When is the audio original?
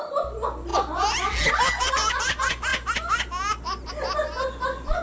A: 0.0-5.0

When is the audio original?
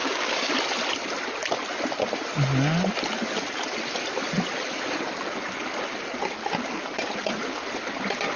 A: 0.5-8.4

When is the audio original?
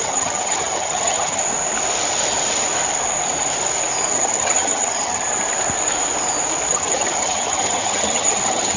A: 1.4-4.1; 5.2-6.7